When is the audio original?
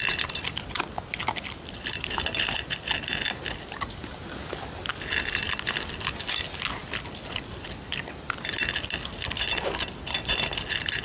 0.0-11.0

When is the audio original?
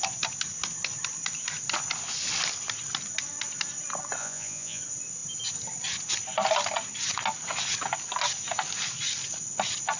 0.0-4.2; 4.8-10.0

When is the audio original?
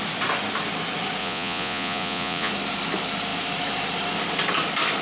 0.0-1.2; 2.5-5.0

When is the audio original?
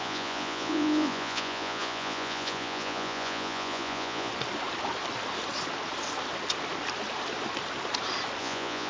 4.3-8.4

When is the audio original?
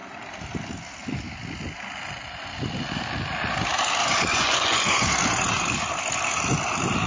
0.0-4.0; 5.1-7.1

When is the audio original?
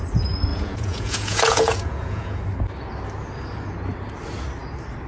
0.0-0.5; 2.4-5.1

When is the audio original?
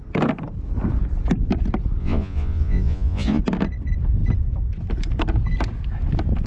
0.0-2.0; 3.4-6.5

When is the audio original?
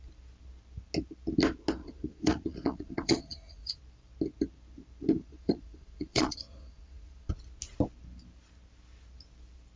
0.0-1.8; 3.8-5.2; 7.3-9.8